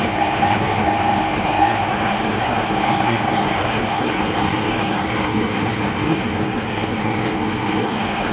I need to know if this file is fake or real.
fake